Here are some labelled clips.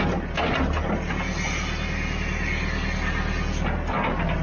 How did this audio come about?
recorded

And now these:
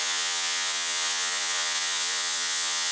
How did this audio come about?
remade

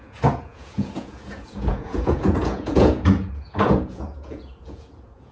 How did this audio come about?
remade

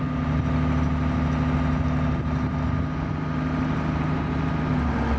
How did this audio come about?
recorded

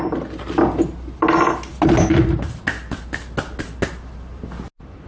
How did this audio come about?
recorded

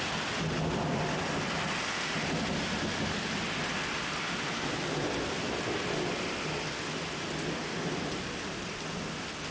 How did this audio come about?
recorded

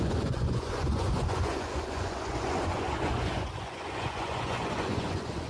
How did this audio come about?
remade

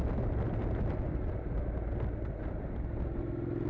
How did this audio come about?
recorded